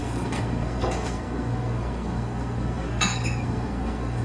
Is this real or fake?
fake